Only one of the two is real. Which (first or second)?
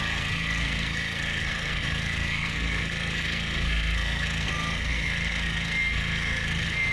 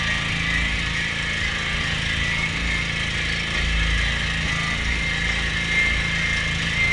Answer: second